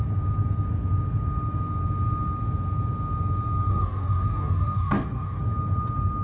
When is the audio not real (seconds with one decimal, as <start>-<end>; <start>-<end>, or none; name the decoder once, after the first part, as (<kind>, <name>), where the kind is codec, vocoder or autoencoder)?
3.7-5.4 (codec, DAC)